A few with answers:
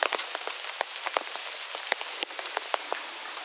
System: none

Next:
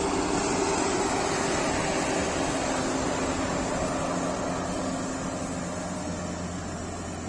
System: none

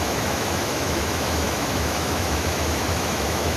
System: autoencoder, DAC-VAE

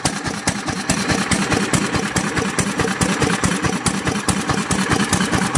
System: none